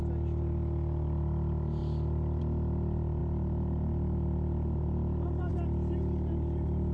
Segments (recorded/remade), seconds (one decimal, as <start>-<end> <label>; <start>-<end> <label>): 0.0-3.2 recorded; 3.2-5.5 remade; 5.5-6.9 recorded